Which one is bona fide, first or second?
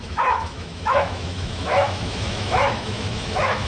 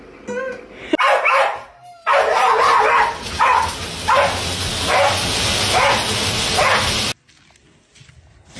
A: second